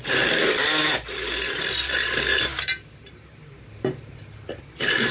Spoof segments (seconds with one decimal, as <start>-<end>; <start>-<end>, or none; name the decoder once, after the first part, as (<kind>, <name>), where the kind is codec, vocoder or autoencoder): none